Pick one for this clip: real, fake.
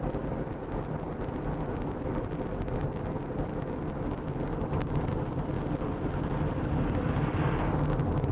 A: real